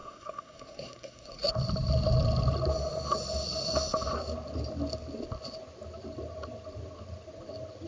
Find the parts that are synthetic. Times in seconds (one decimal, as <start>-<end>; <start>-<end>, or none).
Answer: 0.0-1.5